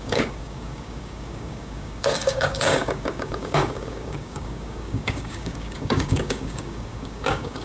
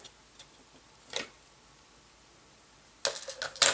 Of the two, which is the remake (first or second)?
first